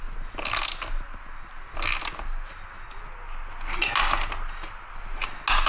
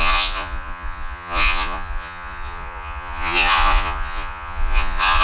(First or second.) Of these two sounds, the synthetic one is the second